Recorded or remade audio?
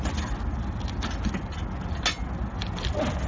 recorded